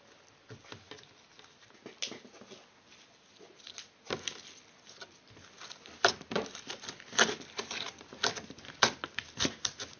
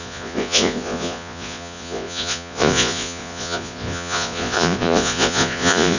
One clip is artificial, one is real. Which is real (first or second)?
first